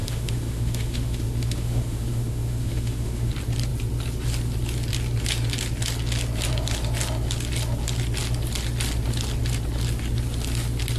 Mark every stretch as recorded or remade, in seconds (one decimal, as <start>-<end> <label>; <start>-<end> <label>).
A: 0.0-3.3 remade; 3.3-11.0 recorded